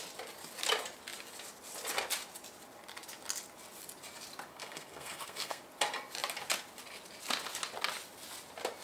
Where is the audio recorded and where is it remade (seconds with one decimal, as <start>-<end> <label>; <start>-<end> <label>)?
0.0-4.5 recorded; 4.5-5.6 remade; 5.6-8.8 recorded